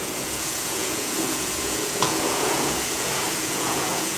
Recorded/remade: remade